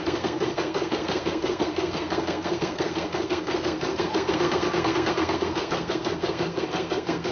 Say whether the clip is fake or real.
fake